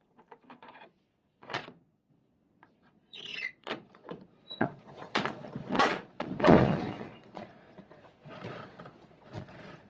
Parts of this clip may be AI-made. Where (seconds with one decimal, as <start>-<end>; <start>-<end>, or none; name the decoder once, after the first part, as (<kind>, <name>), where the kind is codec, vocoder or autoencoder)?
0.0-9.9 (vocoder, Vocos)